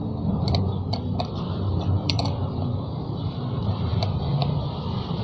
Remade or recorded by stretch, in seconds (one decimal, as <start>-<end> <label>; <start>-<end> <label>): 0.0-0.9 recorded; 0.9-4.0 remade; 4.0-4.4 recorded; 4.4-5.2 remade